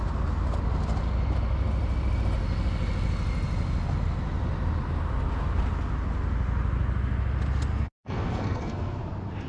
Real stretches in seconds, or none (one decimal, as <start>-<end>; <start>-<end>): 0.0-7.7; 9.0-9.5